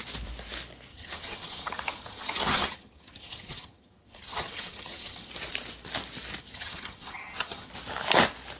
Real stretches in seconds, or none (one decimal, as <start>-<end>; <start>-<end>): 0.0-0.9; 5.3-6.4; 7.7-8.6